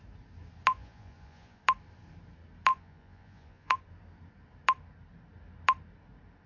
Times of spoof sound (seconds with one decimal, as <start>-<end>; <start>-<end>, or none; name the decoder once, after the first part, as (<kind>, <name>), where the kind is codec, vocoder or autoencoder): 0.7-1.6 (vocoder, Vocos); 2.7-3.8